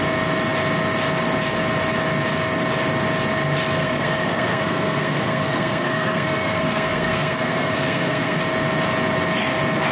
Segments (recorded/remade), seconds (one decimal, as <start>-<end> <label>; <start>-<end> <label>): 0.0-3.8 recorded; 3.8-8.4 remade; 8.4-9.9 recorded